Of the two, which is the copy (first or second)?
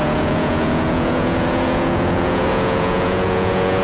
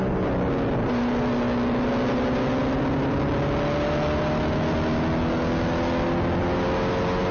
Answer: first